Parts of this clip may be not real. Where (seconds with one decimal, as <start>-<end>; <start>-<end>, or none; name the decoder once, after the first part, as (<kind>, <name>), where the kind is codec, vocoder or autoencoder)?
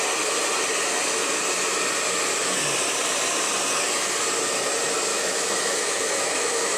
5.1-6.8 (autoencoder, DAC-VAE)